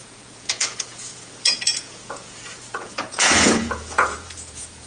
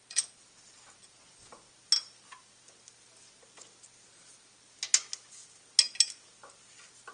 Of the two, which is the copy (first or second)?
first